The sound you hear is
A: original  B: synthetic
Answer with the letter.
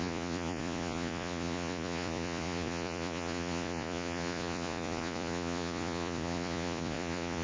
B